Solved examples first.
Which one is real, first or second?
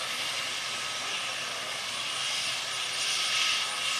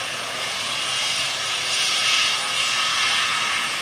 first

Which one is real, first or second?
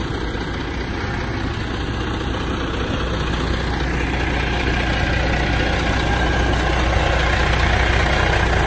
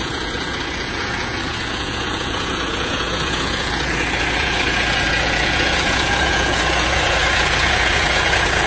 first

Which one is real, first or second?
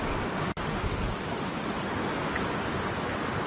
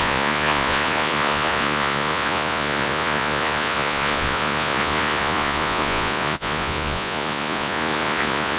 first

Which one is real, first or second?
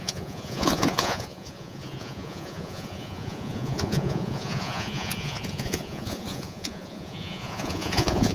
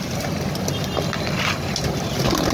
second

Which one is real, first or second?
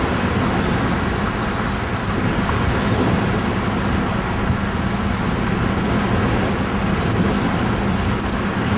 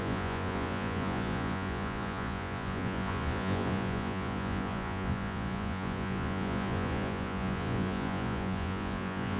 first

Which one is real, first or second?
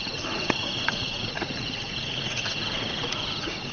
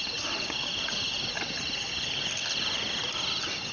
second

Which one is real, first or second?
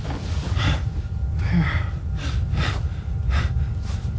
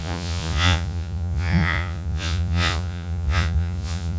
first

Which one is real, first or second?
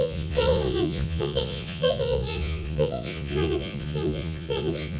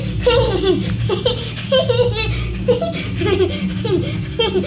second